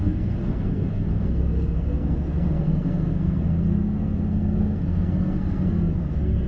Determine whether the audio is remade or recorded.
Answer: remade